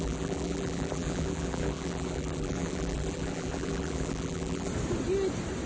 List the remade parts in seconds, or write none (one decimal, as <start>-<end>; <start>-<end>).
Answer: 0.0-4.7